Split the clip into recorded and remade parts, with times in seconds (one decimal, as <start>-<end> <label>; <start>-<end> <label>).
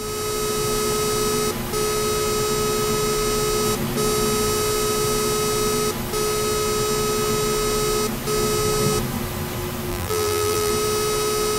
0.0-9.9 recorded; 9.9-10.7 remade; 10.7-11.6 recorded